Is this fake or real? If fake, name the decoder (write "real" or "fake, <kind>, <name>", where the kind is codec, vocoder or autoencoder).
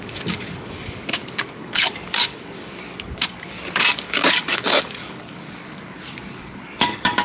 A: fake, codec, DAC